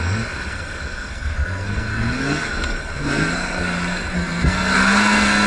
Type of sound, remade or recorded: remade